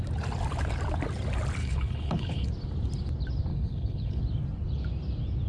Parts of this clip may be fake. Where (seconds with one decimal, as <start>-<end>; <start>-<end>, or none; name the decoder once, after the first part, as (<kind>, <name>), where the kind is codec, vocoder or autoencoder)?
1.6-2.5 (codec, HILCodec); 3.5-4.2